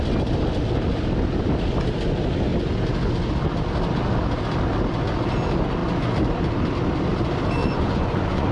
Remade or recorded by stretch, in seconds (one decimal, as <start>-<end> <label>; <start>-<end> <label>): 0.0-7.6 recorded; 7.6-8.5 remade